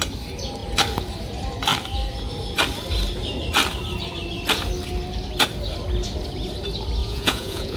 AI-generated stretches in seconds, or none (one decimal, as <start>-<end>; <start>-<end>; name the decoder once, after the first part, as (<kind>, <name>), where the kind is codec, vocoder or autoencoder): 7.0-7.8 (vocoder, Vocos)